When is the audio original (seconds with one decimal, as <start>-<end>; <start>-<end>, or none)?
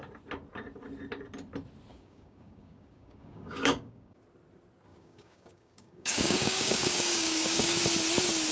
0.0-1.9; 4.2-4.9; 7.8-8.5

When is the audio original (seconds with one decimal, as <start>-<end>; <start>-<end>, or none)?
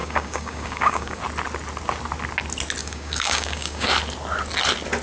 1.2-2.8; 3.9-5.0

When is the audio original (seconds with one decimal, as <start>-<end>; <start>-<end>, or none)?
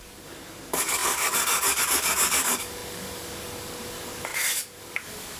none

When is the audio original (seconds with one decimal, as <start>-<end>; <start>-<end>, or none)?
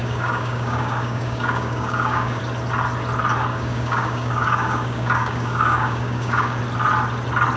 2.4-3.5; 6.6-7.6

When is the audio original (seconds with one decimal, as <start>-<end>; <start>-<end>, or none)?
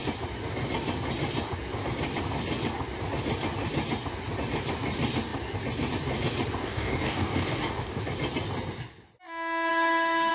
0.0-6.6; 8.0-9.7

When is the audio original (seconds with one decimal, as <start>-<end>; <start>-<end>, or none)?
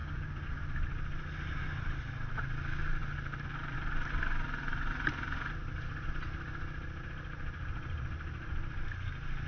0.6-9.5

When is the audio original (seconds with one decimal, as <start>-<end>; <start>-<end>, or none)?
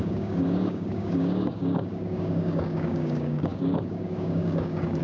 none